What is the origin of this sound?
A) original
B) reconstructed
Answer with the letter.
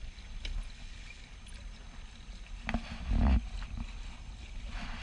A